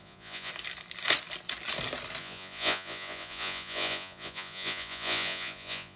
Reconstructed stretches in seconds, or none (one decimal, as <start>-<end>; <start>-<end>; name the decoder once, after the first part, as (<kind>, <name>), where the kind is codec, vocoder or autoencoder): 0.0-0.5 (vocoder, Vocos); 2.2-6.0